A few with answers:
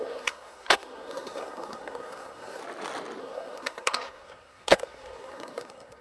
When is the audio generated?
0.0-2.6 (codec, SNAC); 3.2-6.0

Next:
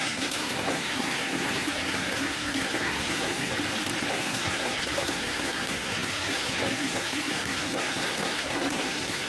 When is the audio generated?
0.0-3.5 (codec, SNAC); 4.1-9.3

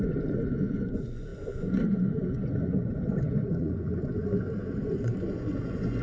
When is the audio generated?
0.0-6.0 (vocoder, Vocos)

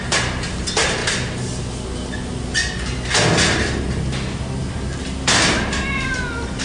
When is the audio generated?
none

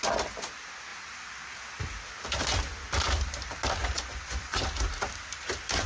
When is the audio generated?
3.8-4.6 (vocoder, Vocos)